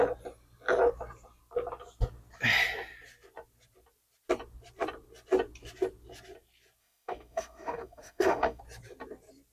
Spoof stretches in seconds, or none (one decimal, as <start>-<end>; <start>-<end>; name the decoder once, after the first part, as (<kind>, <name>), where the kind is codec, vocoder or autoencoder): 6.8-8.6 (autoencoder, DAC-VAE)